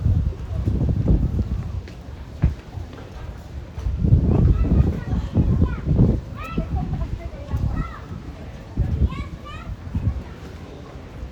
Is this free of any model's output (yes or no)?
no